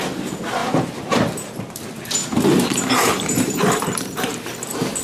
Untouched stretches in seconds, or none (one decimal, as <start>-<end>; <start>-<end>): 0.0-0.6; 1.5-2.2; 4.6-5.0